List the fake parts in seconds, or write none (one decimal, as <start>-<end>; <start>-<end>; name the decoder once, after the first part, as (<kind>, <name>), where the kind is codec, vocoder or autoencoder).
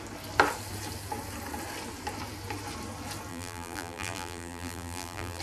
3.3-5.4 (vocoder, BigVGAN v2)